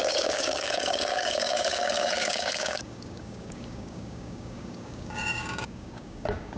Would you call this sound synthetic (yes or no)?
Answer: yes